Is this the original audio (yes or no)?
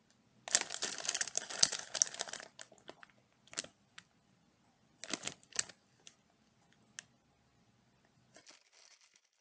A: yes